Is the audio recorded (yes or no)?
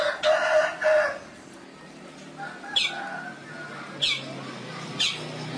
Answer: yes